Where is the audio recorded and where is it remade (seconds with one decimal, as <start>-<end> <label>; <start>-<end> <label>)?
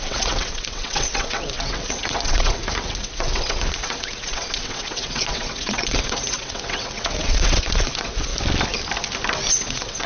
0.0-8.3 remade; 8.3-9.5 recorded; 9.5-10.1 remade